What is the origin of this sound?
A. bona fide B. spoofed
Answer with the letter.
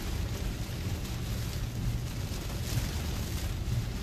A